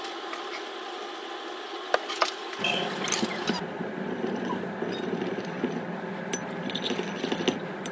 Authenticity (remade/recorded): recorded